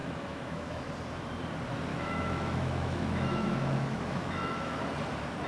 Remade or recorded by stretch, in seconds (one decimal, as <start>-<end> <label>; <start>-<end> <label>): 0.0-0.8 remade; 0.8-1.9 recorded; 1.9-4.8 remade; 4.8-5.5 recorded